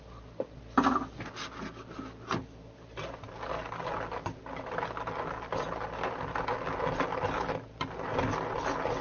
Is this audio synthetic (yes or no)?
no